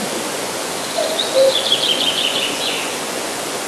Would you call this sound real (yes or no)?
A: no